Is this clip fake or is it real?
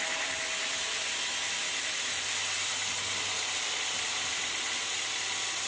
real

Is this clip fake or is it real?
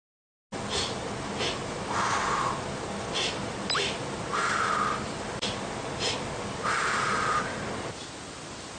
real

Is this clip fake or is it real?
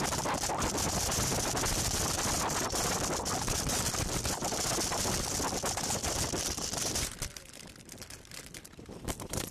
fake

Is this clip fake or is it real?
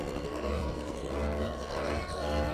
fake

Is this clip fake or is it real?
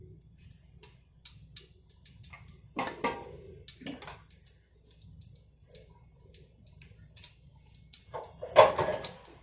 real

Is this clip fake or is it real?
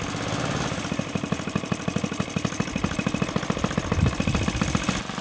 real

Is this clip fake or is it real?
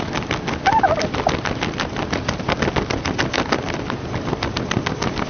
fake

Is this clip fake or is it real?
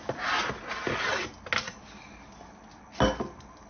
real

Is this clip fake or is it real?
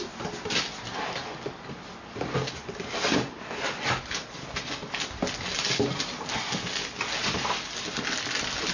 real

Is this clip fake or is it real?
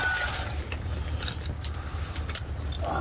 fake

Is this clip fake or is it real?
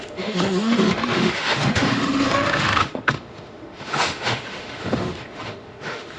fake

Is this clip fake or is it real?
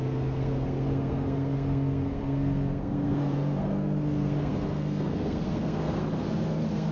fake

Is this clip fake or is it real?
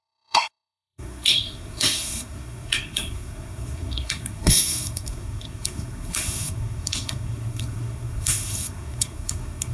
fake